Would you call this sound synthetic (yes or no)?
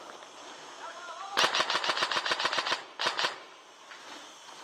no